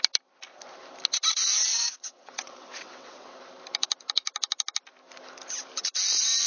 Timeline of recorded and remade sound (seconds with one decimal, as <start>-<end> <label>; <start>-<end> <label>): 0.0-1.7 recorded; 1.7-3.4 remade; 3.4-6.5 recorded